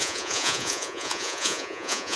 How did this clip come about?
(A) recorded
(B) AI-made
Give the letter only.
B